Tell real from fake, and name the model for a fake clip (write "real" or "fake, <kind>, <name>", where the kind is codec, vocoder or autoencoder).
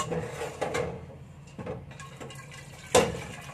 real